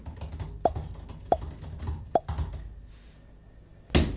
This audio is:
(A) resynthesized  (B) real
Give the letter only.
B